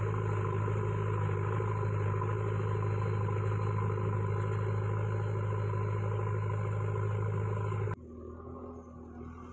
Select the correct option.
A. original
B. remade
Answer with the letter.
A